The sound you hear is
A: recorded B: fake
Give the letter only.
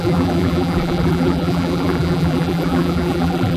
B